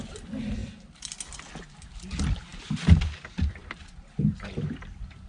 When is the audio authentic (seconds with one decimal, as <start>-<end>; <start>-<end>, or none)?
0.0-3.6